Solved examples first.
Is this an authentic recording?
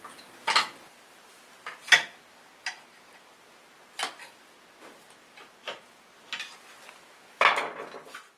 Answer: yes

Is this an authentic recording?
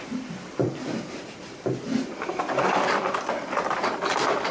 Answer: no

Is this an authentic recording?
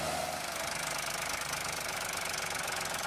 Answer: yes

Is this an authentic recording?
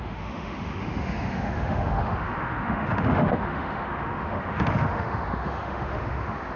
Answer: no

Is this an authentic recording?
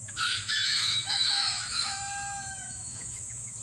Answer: no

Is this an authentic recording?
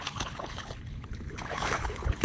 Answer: no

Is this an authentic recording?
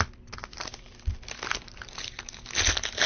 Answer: yes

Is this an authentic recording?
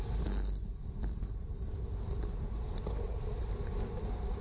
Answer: yes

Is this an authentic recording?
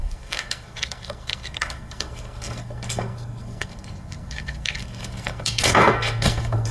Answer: no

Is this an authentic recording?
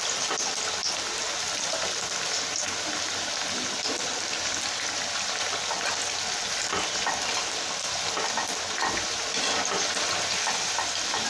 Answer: yes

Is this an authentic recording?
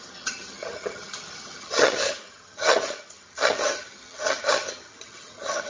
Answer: no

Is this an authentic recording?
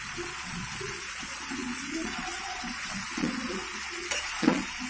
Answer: no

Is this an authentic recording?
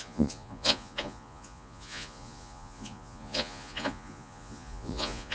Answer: no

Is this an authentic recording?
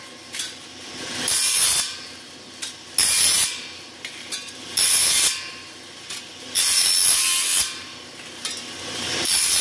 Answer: yes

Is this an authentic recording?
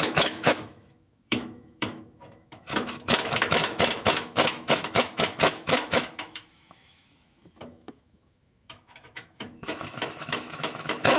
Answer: no